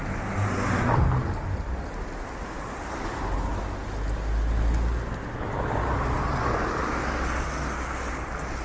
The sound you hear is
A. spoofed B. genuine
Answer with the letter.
B